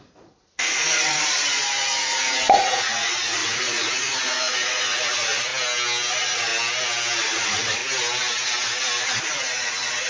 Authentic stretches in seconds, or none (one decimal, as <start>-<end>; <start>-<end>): 5.5-6.1; 6.5-7.2; 7.8-9.0